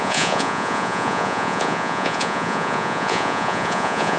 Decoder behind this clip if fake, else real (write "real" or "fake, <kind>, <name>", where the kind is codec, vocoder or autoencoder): fake, vocoder, Vocos